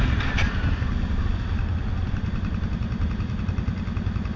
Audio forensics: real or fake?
real